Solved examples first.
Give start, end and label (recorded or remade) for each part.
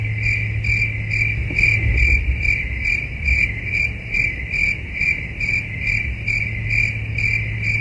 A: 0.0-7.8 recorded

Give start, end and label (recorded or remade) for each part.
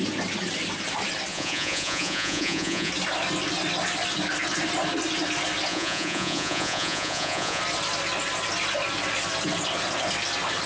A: 0.0-1.3 recorded; 1.3-2.9 remade; 2.9-5.7 recorded; 5.7-7.6 remade; 7.6-10.7 recorded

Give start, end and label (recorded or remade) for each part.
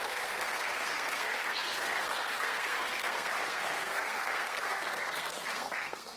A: 0.0-6.2 remade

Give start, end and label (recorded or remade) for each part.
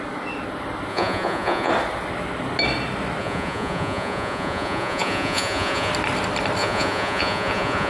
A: 0.0-0.9 recorded; 0.9-1.7 remade; 1.7-3.2 recorded; 3.2-5.9 remade; 5.9-6.6 recorded; 6.6-7.9 remade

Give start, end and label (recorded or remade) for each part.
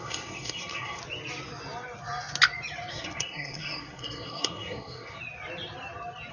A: 0.0-1.0 remade; 1.0-2.9 recorded; 2.9-5.2 remade; 5.2-6.3 recorded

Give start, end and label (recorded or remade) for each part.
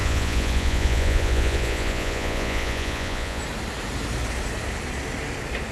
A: 0.0-3.4 remade; 3.4-5.7 recorded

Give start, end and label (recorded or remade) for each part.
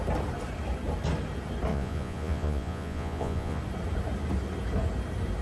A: 0.0-1.7 recorded; 1.7-3.6 remade; 3.6-5.4 recorded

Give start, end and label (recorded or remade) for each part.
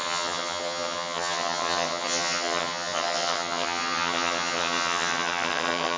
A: 0.0-6.0 remade